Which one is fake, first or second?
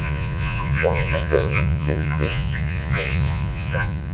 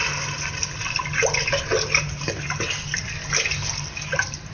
first